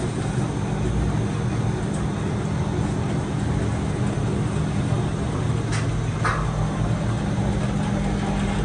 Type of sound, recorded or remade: recorded